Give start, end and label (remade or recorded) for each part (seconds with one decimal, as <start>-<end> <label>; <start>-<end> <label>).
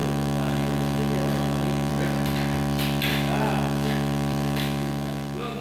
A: 0.0-1.9 remade; 1.9-3.1 recorded; 3.1-5.6 remade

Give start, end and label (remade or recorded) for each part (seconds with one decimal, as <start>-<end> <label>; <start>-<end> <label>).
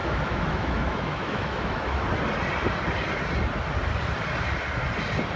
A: 0.0-2.0 remade; 2.0-5.4 recorded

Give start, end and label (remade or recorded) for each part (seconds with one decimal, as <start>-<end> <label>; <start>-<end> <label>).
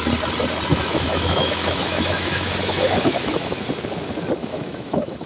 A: 0.0-0.7 recorded; 0.7-3.5 remade; 3.5-4.4 recorded; 4.4-5.3 remade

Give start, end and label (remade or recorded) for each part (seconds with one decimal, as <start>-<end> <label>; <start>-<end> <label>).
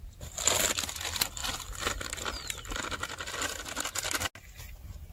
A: 0.0-5.1 recorded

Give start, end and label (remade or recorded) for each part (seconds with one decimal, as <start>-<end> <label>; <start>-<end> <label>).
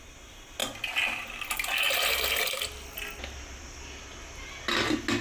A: 0.0-5.2 recorded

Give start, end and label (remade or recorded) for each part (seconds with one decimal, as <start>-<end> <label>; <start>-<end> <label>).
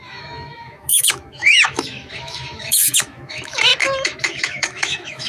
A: 0.0-5.3 remade